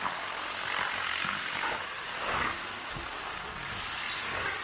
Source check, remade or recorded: recorded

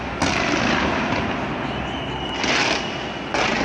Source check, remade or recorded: recorded